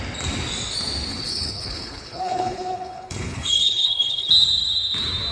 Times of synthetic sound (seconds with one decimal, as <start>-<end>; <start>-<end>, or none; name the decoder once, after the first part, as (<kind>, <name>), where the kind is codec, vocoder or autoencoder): 1.1-4.3 (codec, HILCodec)